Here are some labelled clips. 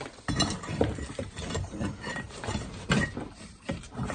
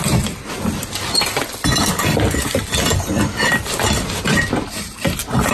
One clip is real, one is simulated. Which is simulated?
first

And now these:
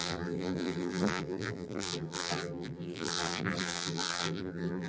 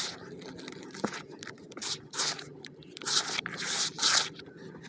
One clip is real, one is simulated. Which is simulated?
first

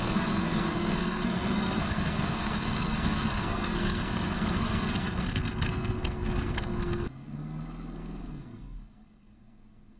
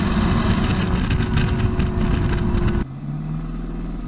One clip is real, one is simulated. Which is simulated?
first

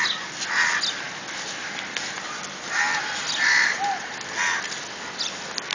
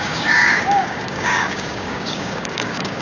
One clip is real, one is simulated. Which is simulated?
second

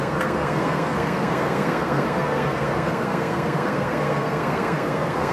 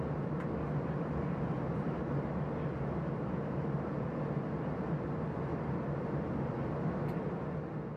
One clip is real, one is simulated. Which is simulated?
first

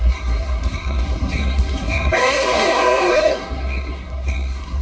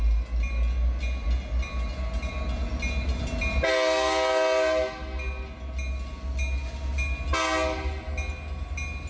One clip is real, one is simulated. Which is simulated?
first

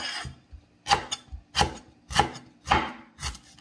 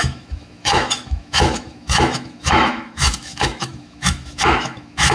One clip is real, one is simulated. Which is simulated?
second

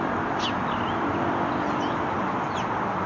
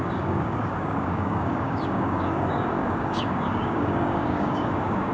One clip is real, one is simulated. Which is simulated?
second